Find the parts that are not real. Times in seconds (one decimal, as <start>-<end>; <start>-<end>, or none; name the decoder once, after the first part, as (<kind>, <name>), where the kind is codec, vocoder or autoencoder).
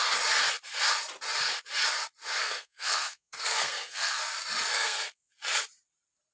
2.4-4.2 (codec, SNAC); 4.7-5.3